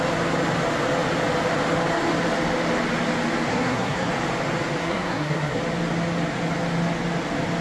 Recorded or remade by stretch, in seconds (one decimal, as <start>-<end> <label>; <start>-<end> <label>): 0.0-3.5 recorded; 3.5-4.1 remade; 4.1-4.8 recorded; 4.8-5.6 remade; 5.6-7.6 recorded